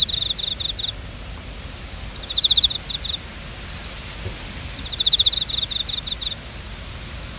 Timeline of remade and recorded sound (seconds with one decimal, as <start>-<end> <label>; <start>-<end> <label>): 0.0-7.4 recorded